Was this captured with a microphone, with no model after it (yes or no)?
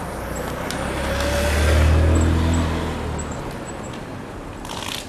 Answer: yes